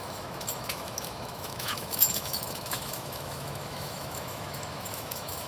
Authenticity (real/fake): fake